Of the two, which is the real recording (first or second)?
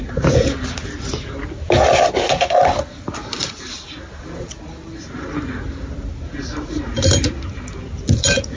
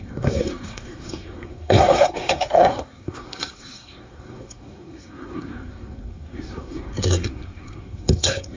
first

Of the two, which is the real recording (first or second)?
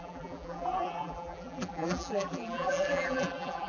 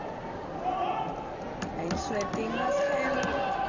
second